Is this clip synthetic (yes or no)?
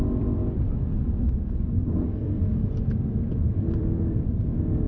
yes